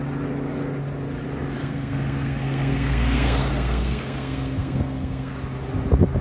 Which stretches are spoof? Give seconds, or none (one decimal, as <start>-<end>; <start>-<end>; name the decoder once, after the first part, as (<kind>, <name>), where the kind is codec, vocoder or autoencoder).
1.6-5.3 (codec, SNAC)